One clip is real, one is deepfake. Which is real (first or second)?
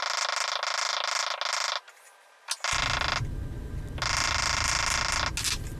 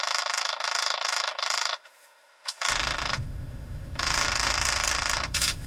first